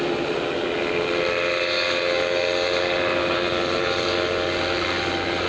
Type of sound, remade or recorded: recorded